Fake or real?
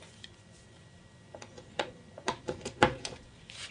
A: fake